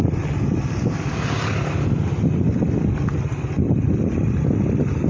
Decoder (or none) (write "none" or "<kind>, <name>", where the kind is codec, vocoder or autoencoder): none